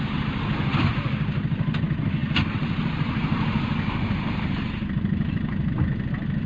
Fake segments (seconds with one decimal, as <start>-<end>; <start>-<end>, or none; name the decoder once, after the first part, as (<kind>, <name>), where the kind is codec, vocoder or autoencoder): none